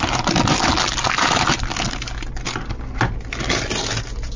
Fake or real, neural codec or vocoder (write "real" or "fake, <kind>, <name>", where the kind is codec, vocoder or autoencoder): real